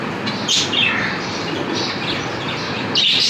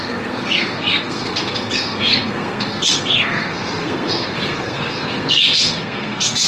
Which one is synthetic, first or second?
second